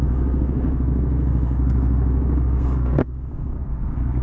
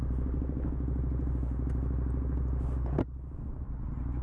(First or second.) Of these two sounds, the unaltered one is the second